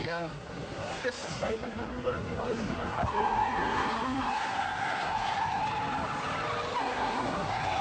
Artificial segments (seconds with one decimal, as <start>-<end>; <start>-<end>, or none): 0.0-5.6; 6.8-7.8